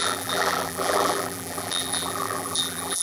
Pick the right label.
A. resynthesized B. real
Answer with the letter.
A